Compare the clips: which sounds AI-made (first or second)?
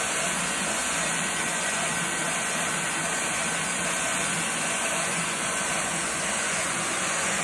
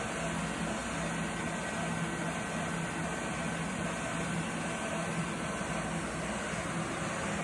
first